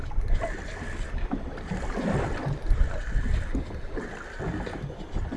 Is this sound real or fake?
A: real